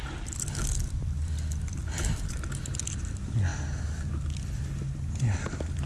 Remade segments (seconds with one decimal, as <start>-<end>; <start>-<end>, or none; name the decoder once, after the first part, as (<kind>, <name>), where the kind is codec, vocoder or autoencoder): 0.0-3.5 (vocoder, BigVGAN v2); 4.2-5.9